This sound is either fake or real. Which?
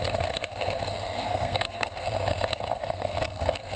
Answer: fake